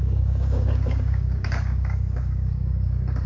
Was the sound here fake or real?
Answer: fake